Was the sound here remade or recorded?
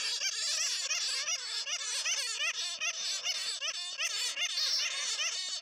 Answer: recorded